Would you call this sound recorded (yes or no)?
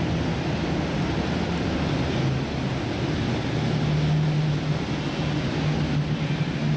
yes